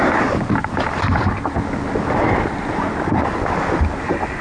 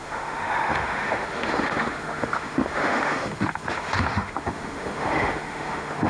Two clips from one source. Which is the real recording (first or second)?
first